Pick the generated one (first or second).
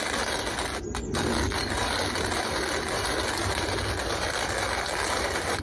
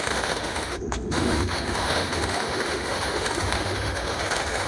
second